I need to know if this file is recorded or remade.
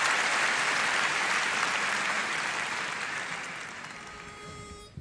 remade